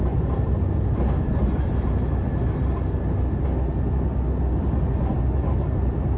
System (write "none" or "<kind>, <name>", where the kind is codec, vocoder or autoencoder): none